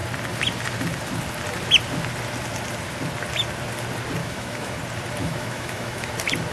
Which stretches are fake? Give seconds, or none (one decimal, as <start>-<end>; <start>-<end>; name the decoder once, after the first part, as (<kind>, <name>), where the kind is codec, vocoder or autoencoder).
4.2-4.8 (autoencoder, DAC-VAE); 5.2-6.1

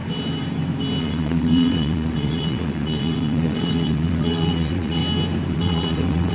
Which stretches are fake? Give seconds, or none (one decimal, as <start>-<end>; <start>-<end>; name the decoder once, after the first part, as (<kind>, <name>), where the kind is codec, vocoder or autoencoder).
1.0-5.0 (vocoder, WaveNeXt); 5.5-6.3

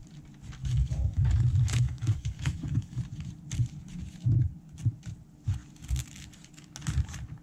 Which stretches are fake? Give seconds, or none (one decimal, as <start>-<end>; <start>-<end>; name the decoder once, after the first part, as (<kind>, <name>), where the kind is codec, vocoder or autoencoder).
0.6-3.0 (codec, DAC)

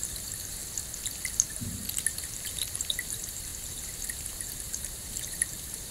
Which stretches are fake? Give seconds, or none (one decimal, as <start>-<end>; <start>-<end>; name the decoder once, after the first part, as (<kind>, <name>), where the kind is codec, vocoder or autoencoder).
0.0-0.6 (vocoder, BigVGAN v2); 1.6-5.9

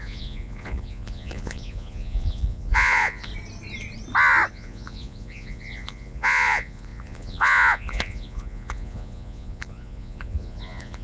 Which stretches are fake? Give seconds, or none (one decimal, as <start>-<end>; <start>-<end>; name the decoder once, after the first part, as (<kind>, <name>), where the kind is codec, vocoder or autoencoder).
0.0-3.3 (vocoder, Vocos); 4.5-11.0

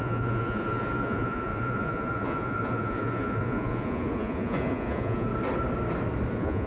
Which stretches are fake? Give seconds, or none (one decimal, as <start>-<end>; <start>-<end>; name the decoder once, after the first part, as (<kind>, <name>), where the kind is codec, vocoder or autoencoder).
0.0-5.3 (vocoder, Vocos); 6.3-6.7

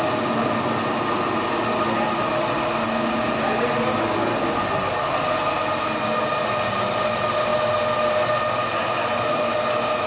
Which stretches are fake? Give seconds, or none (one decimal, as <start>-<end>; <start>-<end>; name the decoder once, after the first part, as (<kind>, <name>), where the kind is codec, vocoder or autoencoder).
none

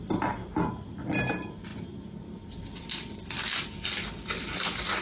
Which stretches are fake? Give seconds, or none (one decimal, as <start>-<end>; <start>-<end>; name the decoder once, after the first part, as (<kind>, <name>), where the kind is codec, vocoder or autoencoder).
none